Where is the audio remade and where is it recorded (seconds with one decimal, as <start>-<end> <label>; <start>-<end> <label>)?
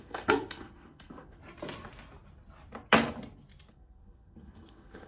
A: 0.0-1.4 remade; 1.4-3.7 recorded; 3.7-5.1 remade